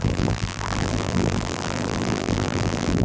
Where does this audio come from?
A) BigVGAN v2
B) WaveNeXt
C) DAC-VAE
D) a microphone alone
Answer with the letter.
A